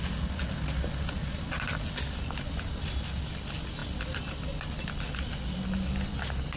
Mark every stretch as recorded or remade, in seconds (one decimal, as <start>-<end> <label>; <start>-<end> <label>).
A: 0.0-6.6 recorded